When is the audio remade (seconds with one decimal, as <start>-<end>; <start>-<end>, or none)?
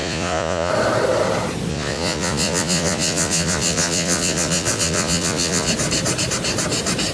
0.0-0.7; 1.7-5.7